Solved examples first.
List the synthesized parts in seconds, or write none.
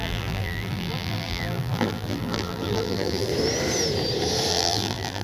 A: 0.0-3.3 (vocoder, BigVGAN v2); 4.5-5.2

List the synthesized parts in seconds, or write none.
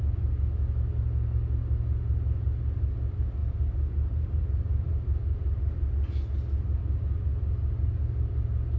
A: 3.4-5.9 (vocoder, BigVGAN v2)